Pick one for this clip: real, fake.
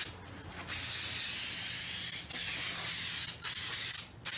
real